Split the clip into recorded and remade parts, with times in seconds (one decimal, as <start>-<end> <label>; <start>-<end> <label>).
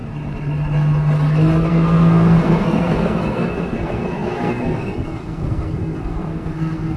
0.0-1.7 recorded; 1.7-7.0 remade